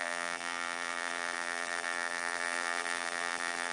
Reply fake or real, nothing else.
fake